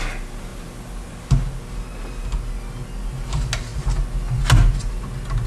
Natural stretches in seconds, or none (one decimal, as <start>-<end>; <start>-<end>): 0.0-5.5